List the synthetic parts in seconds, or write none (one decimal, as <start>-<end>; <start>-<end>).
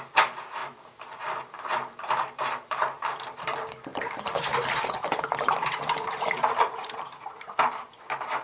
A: 0.6-3.4; 3.9-7.9